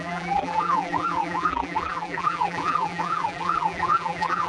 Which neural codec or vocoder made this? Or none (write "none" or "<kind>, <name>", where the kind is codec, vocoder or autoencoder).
vocoder, BigVGAN v2